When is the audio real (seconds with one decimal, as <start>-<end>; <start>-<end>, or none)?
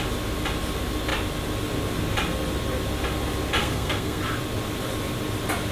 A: 0.0-3.6; 4.2-5.7